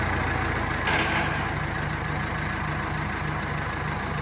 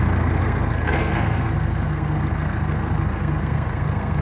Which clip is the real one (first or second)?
first